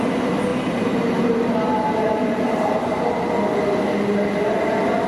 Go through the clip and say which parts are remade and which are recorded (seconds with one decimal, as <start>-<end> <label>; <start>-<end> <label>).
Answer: 0.0-0.5 recorded; 0.5-3.0 remade; 3.0-5.1 recorded